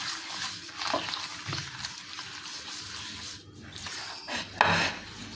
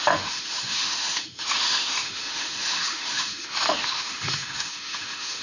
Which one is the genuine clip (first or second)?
first